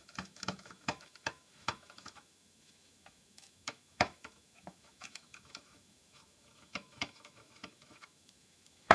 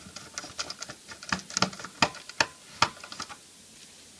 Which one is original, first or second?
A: second